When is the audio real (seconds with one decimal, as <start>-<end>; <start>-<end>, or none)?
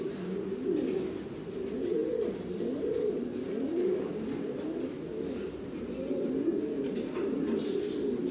0.0-8.3